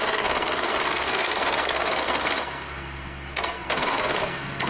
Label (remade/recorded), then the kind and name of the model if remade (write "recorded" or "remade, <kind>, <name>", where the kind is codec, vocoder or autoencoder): remade, codec, SNAC